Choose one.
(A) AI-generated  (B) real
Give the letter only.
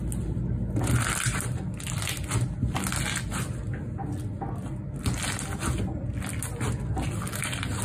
B